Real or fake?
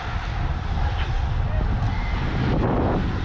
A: real